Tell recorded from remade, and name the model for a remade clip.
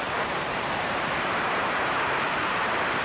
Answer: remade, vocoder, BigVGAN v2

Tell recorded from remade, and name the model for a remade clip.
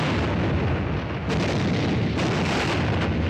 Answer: recorded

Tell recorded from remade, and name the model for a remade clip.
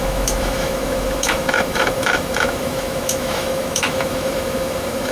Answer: remade, autoencoder, DAC-VAE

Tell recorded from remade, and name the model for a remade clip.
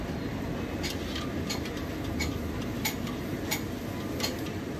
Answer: recorded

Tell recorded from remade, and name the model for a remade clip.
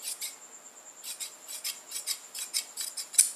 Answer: recorded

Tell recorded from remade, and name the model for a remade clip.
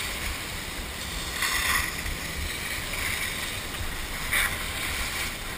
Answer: recorded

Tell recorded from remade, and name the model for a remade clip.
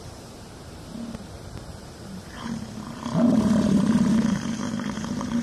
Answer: remade, vocoder, BigVGAN v2